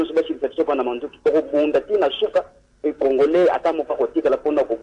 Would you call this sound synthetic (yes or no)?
no